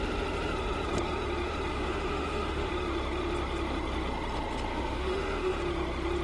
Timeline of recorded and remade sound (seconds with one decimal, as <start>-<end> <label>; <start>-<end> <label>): 0.0-1.7 recorded; 1.7-2.7 remade; 2.7-4.7 recorded; 4.7-5.6 remade; 5.6-6.2 recorded